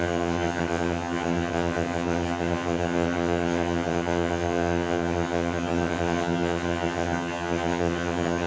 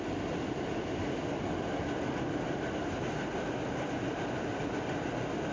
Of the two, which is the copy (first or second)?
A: first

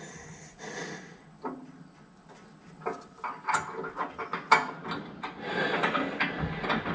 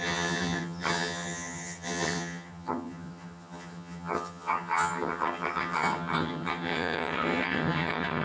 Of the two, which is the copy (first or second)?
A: second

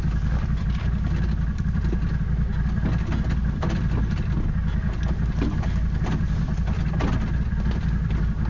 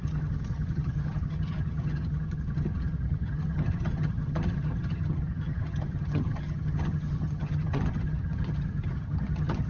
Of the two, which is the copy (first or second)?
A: second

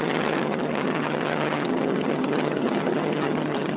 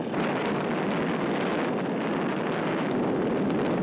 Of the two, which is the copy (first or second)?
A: first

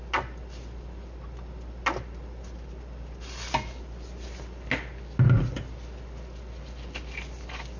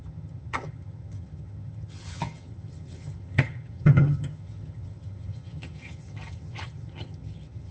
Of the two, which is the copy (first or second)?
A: second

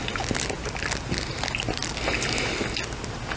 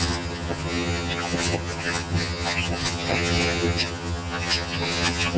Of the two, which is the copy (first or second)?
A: second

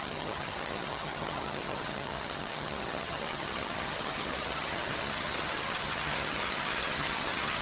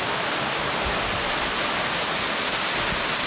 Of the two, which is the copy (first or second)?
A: first